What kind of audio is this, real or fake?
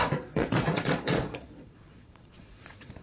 fake